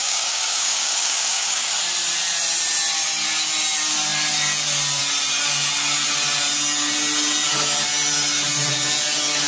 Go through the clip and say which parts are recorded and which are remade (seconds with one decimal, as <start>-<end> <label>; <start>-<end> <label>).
0.0-1.7 remade; 1.7-9.5 recorded